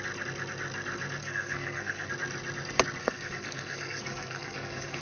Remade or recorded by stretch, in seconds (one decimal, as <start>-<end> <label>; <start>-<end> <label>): 0.0-1.2 recorded; 1.2-2.1 remade; 2.1-3.0 recorded; 3.0-5.0 remade